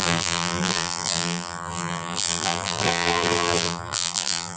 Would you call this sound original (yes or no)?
no